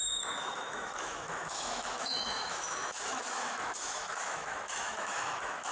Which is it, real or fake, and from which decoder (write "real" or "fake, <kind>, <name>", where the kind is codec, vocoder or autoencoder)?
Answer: fake, autoencoder, DAC-VAE